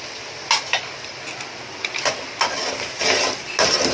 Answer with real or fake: real